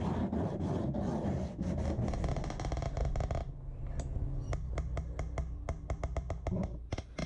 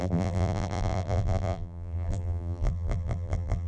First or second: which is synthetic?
second